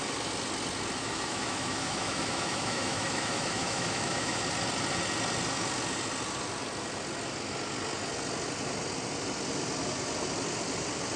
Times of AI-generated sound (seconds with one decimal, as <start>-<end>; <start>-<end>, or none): 1.0-4.4